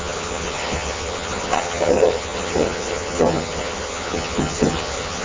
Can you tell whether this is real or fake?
fake